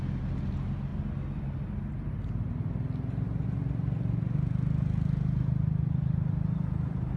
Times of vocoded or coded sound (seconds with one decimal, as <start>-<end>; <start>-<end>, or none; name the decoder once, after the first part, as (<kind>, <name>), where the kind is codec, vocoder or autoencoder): none